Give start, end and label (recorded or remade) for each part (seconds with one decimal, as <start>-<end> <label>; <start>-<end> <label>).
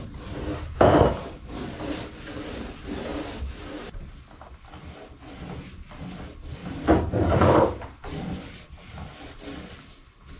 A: 0.0-3.1 recorded; 3.1-4.4 remade; 4.4-6.6 recorded; 6.6-9.1 remade; 9.1-10.4 recorded